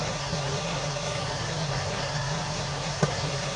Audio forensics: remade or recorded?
remade